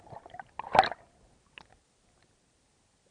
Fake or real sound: real